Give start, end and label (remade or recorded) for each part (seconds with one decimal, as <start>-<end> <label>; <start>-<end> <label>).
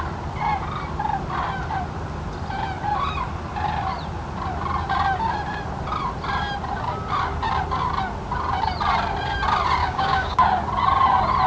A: 0.0-9.8 recorded; 9.8-10.4 remade; 10.4-11.5 recorded